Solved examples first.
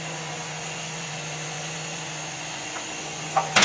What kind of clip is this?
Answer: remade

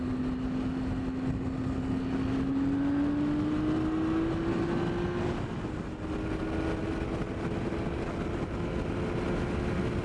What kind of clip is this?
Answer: recorded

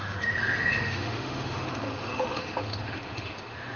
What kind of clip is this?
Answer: remade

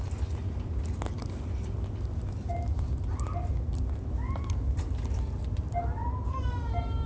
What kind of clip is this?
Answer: recorded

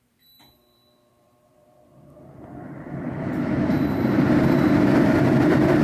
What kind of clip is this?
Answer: remade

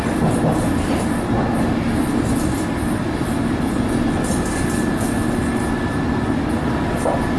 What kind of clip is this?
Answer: recorded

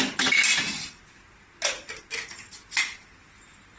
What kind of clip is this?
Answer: recorded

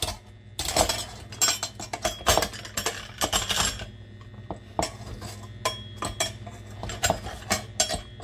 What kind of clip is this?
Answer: recorded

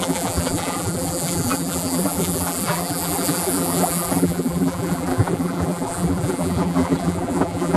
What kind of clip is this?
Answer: remade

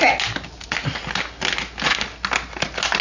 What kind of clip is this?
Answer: recorded